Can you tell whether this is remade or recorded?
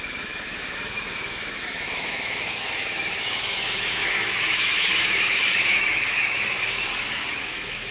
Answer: remade